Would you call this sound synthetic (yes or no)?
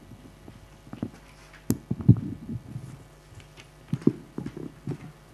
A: no